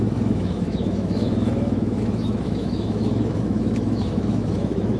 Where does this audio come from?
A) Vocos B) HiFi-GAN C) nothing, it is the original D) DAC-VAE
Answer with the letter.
D